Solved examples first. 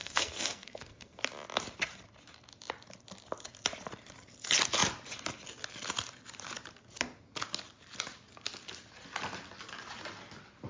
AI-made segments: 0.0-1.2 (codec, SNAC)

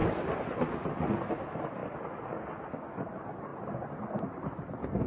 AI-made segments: none

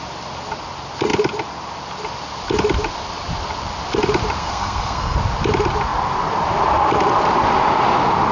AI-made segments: 4.4-5.2 (codec, SNAC)

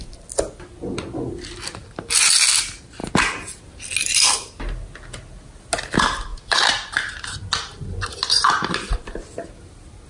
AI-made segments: none

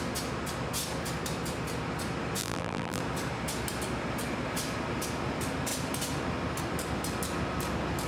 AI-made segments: 2.4-3.0 (vocoder, BigVGAN v2)

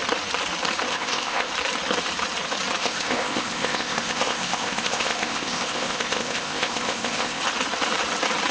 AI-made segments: 0.9-1.5 (codec, ZipCodec); 2.8-7.4